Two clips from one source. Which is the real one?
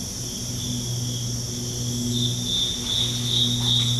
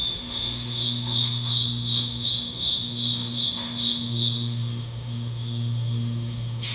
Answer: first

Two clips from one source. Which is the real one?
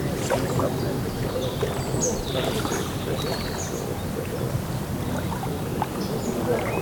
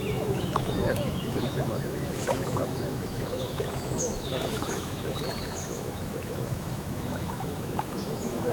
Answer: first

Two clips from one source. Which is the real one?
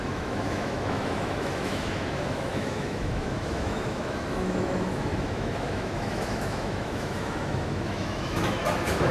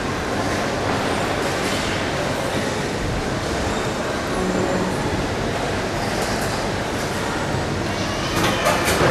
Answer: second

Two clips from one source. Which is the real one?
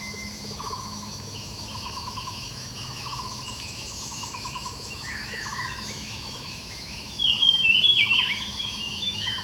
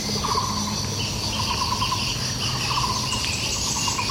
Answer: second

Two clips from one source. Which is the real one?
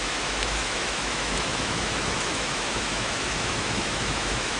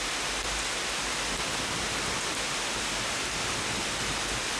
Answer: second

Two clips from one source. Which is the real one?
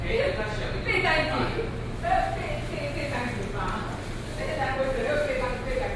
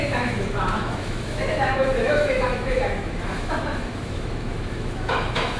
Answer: first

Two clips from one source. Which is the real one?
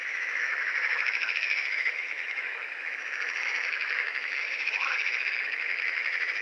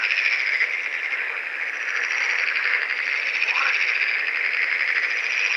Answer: second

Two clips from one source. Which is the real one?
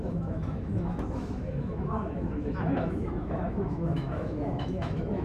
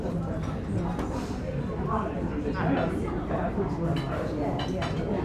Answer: second